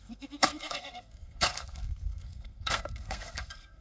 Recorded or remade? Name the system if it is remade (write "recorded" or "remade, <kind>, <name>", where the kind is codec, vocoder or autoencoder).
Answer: remade, codec, SNAC